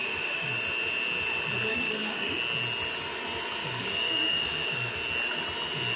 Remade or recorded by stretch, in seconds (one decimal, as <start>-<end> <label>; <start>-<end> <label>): 0.0-0.5 remade; 0.5-1.7 recorded; 1.7-2.4 remade; 2.4-3.6 recorded; 3.6-4.9 remade; 4.9-6.0 recorded